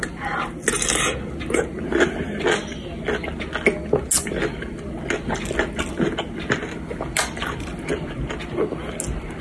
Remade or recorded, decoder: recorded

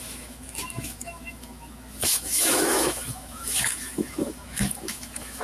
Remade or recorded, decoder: remade, autoencoder, DAC-VAE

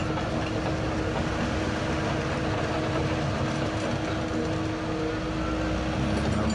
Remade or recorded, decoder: recorded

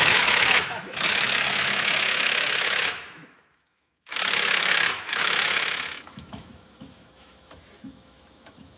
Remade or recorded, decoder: remade, autoencoder, DAC-VAE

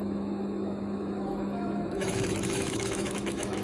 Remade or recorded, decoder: remade, autoencoder, DAC-VAE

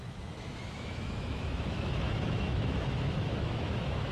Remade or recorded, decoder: remade, autoencoder, DAC-VAE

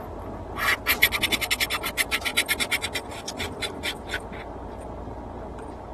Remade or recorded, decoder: recorded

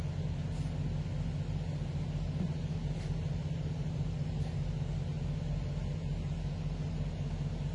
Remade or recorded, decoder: recorded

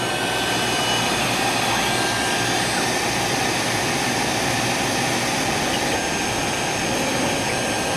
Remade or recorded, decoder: recorded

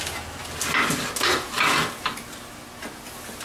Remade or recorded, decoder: recorded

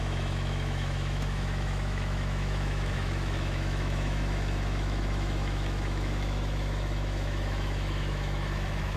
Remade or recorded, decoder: remade, autoencoder, DAC-VAE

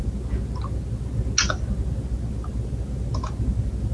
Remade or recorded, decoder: recorded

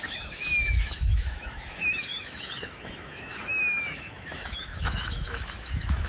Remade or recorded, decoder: remade, autoencoder, DAC-VAE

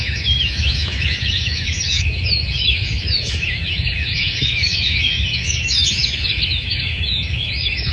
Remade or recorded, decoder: remade, autoencoder, DAC-VAE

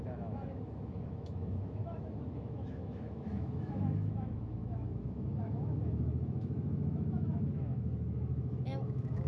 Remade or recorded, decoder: remade, autoencoder, DAC-VAE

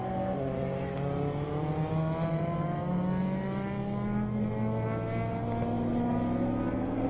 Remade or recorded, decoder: recorded